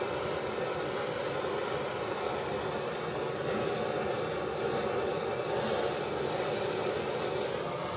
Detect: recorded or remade recorded